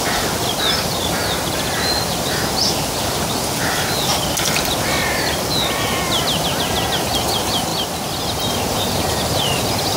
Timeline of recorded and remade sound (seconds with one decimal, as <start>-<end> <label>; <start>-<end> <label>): 0.0-10.0 recorded